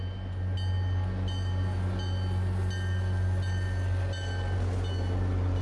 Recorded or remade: recorded